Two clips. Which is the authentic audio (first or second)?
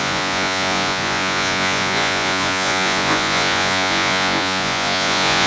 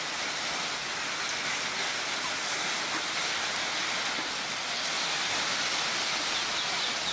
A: second